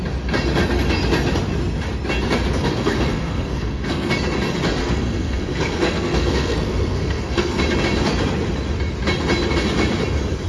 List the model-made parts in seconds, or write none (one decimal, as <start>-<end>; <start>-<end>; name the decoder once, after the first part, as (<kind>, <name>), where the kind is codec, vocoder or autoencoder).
2.6-4.1 (codec, SNAC); 4.8-7.6